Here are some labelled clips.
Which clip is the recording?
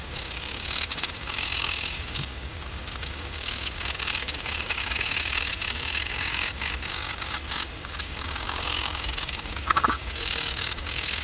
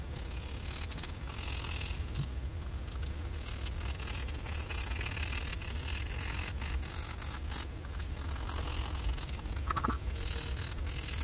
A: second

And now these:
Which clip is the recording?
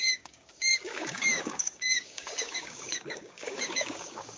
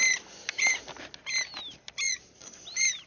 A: second